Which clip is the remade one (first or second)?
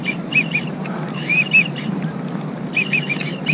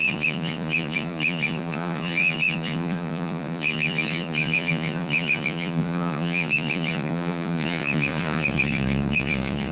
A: second